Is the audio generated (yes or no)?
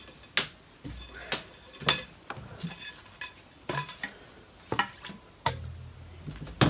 no